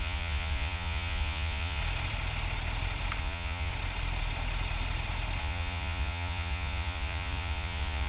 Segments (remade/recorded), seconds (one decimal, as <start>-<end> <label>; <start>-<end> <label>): 0.0-1.8 remade; 1.8-3.2 recorded; 3.2-3.7 remade; 3.7-5.4 recorded; 5.4-8.1 remade